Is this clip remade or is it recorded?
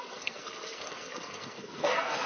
remade